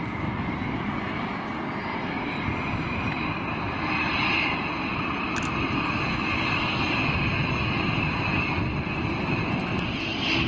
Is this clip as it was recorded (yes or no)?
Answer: yes